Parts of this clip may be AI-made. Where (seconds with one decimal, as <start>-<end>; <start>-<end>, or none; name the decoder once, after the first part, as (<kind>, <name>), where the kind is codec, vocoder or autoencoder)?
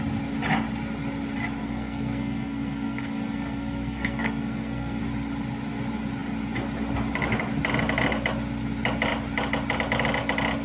1.6-5.0 (codec, SNAC)